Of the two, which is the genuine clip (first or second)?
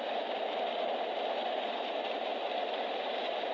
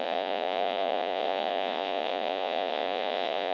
first